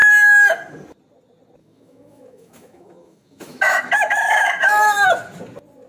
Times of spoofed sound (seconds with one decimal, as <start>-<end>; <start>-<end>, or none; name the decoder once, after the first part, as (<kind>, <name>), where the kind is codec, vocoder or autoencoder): 1.6-5.1 (autoencoder, DAC-VAE)